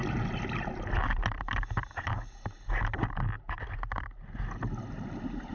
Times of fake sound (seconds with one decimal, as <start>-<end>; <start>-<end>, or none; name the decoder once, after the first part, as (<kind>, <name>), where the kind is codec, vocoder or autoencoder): none